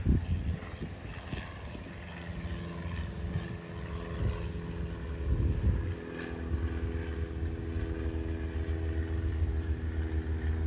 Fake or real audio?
real